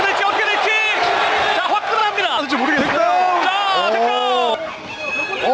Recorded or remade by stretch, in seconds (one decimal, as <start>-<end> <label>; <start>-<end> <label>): 0.0-5.5 recorded